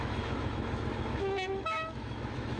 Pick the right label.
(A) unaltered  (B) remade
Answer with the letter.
B